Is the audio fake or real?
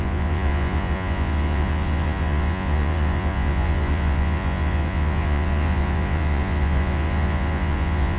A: fake